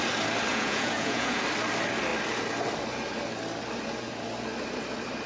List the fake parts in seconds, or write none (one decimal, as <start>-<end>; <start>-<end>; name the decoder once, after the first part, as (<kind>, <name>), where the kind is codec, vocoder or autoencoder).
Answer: 0.5-1.4 (vocoder, Vocos)